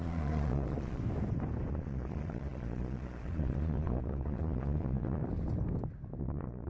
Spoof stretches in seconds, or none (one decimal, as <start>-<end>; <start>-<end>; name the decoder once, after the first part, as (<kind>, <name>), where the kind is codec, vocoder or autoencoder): 0.0-1.0 (vocoder, Vocos); 1.7-5.2; 6.2-6.7